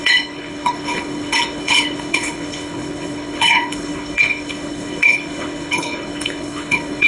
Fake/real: fake